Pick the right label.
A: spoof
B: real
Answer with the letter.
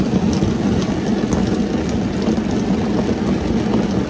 B